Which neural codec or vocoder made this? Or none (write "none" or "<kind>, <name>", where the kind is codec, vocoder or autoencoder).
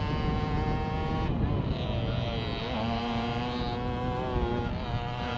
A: none